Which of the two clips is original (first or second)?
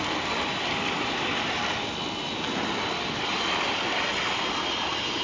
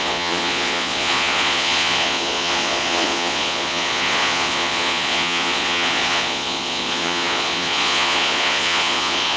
first